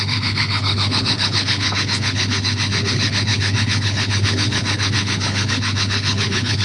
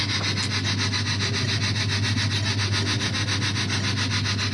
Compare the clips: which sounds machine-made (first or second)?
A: first